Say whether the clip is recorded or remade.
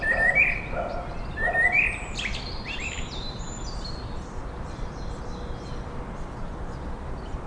recorded